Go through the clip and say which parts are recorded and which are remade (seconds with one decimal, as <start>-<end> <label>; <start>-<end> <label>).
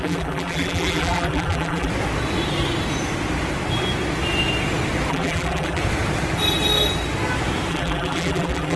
0.0-1.9 remade; 1.9-5.1 recorded; 5.1-5.8 remade; 5.8-7.7 recorded; 7.7-8.8 remade